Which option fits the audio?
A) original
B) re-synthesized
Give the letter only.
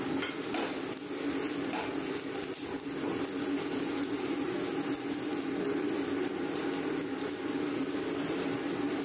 A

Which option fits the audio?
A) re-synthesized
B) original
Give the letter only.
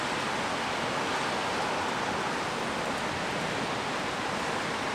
B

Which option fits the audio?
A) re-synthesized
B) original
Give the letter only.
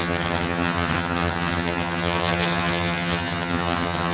A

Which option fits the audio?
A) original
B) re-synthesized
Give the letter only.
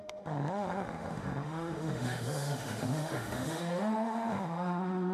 B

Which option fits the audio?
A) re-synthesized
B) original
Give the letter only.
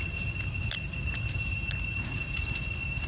B